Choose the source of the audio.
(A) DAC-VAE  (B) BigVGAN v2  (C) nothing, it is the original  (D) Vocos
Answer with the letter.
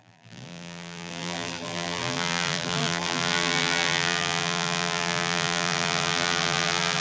B